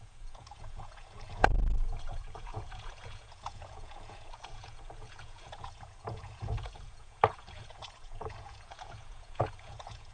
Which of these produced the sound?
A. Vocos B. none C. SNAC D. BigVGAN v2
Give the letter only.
A